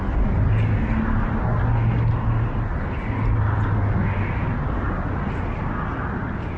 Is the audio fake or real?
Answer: real